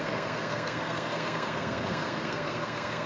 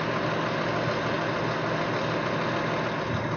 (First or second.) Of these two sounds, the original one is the second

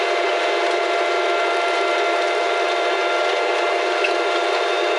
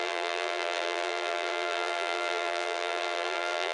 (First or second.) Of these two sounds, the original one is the first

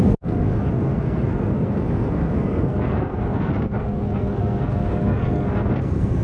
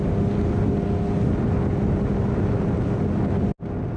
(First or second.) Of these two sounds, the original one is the second